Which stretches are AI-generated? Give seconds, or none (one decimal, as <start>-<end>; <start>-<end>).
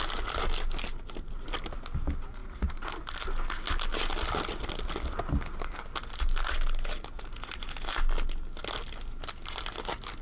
none